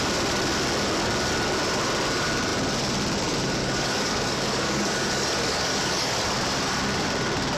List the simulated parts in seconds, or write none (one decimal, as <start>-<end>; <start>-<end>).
3.6-6.2